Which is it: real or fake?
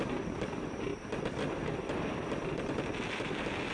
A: real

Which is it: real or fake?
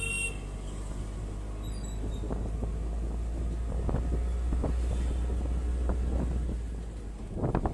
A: real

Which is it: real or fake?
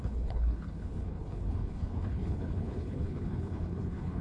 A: fake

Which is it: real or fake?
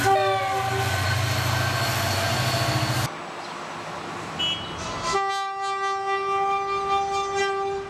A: real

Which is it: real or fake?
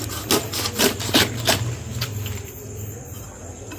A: real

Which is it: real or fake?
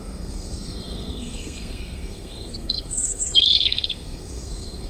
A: fake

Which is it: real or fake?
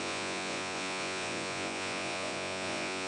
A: fake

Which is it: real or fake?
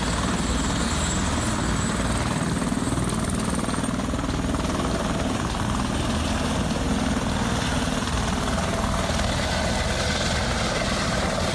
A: real